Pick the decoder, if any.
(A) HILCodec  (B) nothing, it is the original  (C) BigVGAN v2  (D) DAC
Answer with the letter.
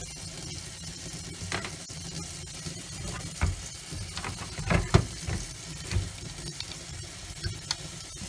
B